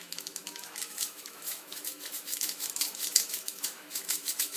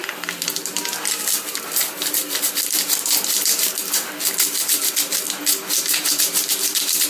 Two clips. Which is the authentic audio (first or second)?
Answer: second